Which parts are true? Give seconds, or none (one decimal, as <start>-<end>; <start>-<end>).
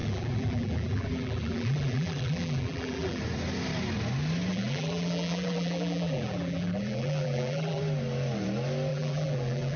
3.2-4.5; 7.8-8.9